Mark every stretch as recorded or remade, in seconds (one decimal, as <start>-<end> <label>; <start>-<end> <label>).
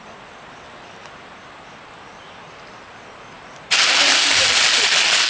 0.0-5.3 recorded